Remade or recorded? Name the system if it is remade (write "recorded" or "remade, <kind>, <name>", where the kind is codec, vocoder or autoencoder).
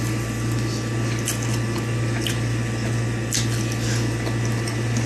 recorded